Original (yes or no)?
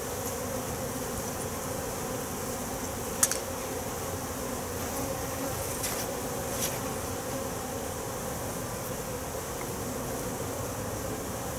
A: yes